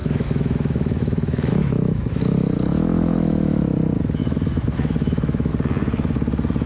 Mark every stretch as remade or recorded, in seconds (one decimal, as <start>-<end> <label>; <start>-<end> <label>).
0.0-2.2 remade; 2.2-2.7 recorded; 2.7-3.6 remade; 3.6-4.2 recorded; 4.2-5.5 remade; 5.5-6.7 recorded